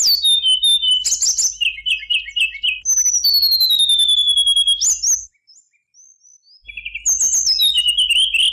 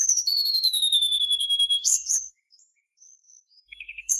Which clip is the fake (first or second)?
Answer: second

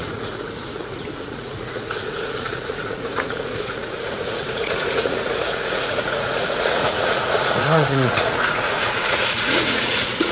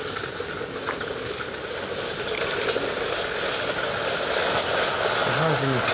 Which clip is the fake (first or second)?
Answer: first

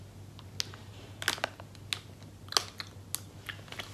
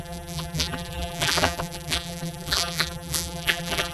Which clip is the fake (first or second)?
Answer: second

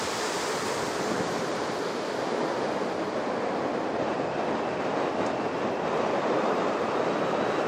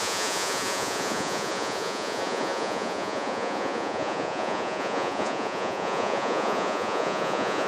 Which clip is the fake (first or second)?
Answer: second